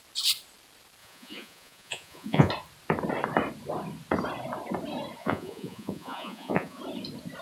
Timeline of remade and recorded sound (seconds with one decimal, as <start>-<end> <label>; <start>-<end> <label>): 0.0-1.0 recorded; 1.0-2.5 remade; 2.5-5.2 recorded; 5.2-6.8 remade; 6.8-7.4 recorded